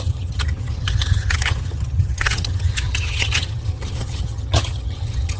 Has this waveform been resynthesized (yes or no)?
yes